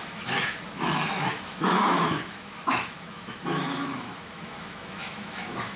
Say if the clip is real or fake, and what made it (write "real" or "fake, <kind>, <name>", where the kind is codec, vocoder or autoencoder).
fake, autoencoder, DAC-VAE